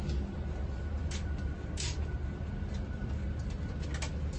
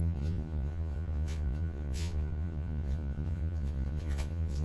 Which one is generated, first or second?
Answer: second